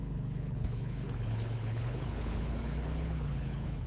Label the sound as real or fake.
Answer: fake